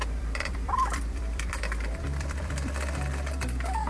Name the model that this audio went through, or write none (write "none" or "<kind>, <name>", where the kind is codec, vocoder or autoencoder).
vocoder, BigVGAN v2